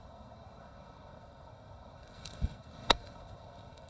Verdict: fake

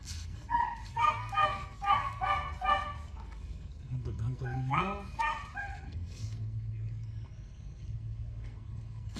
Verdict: fake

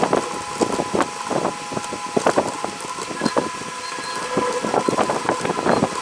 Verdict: real